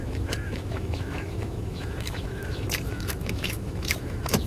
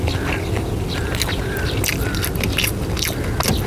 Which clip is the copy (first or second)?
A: first